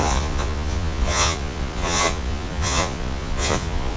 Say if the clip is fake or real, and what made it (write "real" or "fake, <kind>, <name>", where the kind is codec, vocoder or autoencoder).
fake, vocoder, Vocos